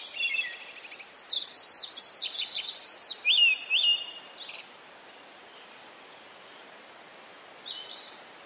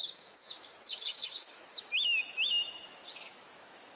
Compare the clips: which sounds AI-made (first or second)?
second